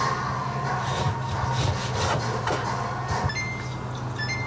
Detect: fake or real real